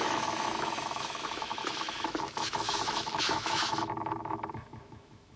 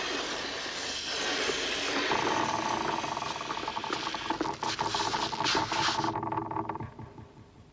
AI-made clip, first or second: first